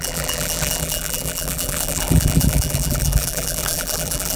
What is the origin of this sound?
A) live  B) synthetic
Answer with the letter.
B